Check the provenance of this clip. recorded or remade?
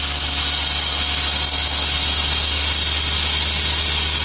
recorded